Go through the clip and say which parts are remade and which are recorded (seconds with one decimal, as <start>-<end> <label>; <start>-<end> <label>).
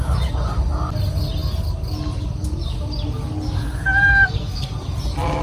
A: 0.0-4.1 recorded; 4.1-4.7 remade; 4.7-5.4 recorded